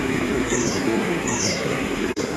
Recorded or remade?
remade